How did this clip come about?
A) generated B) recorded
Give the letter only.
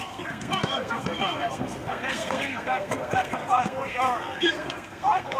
A